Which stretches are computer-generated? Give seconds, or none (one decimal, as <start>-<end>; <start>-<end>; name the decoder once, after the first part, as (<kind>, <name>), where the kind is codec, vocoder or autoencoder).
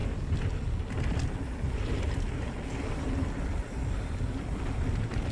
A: none